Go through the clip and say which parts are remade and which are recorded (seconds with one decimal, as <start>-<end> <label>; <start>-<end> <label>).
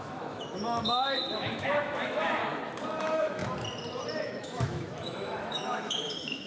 0.0-2.4 remade; 2.4-3.0 recorded; 3.0-3.4 remade; 3.4-4.2 recorded; 4.2-6.5 remade